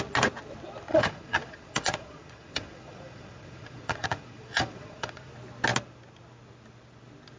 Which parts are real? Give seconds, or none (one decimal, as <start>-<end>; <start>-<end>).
0.0-0.9; 5.3-7.4